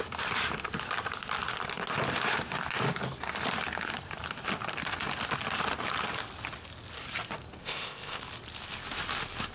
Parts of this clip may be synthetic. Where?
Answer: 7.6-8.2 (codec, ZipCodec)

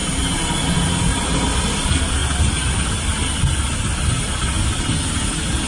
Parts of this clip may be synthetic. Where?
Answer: none

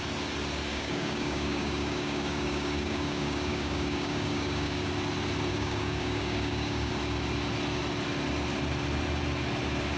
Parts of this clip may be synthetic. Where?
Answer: 0.7-4.9 (codec, DAC); 5.5-6.9

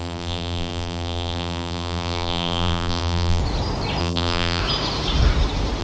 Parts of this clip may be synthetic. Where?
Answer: 0.0-3.4 (vocoder, BigVGAN v2); 4.0-4.6

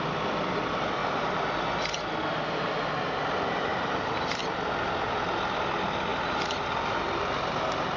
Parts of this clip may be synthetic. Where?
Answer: 1.0-1.5 (vocoder, BigVGAN v2); 3.7-4.4